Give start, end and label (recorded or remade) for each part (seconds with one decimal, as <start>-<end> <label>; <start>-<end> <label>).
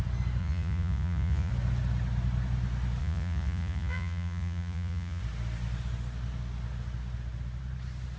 0.0-0.4 recorded; 0.4-1.5 remade; 1.5-3.0 recorded; 3.0-5.2 remade; 5.2-8.2 recorded